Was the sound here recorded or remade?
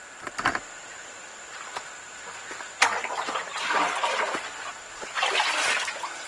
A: recorded